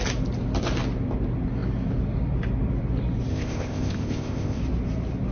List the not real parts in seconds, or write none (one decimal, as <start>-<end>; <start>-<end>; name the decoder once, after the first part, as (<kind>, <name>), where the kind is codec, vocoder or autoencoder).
3.3-4.6 (codec, ZipCodec)